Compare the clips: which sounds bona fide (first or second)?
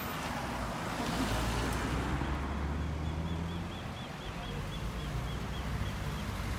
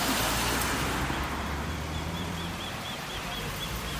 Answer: first